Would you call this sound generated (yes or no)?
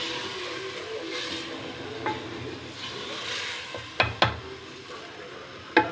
no